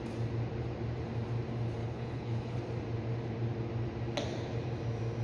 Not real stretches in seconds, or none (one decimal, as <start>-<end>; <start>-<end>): 1.8-2.6